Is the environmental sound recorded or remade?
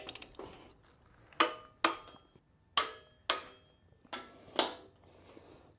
recorded